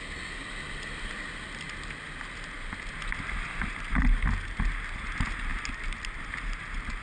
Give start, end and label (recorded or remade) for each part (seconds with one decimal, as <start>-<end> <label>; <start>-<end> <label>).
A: 0.0-7.0 recorded